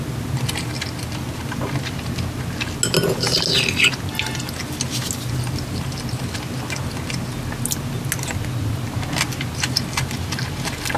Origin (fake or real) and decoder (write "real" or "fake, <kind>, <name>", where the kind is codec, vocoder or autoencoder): real